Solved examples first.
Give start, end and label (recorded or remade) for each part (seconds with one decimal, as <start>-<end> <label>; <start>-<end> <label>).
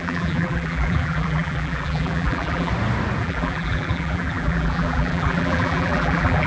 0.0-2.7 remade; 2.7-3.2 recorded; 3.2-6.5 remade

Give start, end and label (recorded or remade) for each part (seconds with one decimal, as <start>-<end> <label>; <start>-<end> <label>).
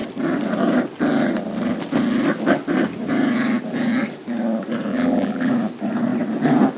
0.0-4.9 recorded; 4.9-5.5 remade; 5.5-6.8 recorded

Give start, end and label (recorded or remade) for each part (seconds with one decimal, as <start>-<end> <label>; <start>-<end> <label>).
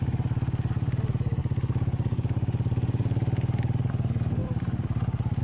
0.0-4.4 recorded; 4.4-5.4 remade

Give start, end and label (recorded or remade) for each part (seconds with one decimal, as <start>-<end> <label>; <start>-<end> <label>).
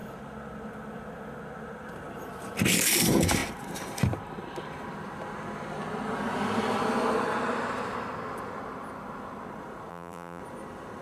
0.0-9.9 recorded; 9.9-10.4 remade; 10.4-11.0 recorded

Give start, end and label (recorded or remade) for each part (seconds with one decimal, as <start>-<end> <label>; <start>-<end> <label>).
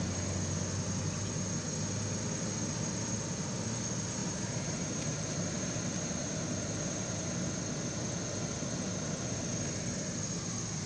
0.0-4.2 recorded; 4.2-7.1 remade; 7.1-10.9 recorded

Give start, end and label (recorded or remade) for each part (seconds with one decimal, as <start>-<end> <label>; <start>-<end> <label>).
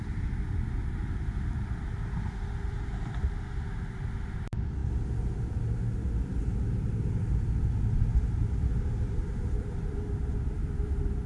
0.0-8.1 recorded; 8.1-11.3 remade